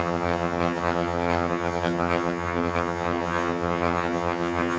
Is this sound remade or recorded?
remade